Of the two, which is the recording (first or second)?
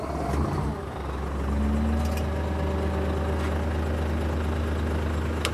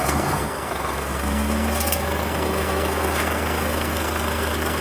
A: first